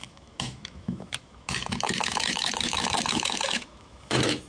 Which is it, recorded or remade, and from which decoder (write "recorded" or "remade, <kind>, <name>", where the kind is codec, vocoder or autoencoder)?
remade, autoencoder, DAC-VAE